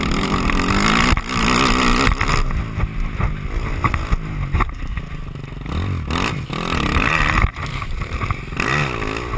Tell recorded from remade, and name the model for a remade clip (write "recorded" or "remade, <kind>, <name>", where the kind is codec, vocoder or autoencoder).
recorded